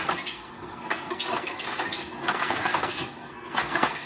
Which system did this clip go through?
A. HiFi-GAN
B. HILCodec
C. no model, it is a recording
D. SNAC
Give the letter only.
D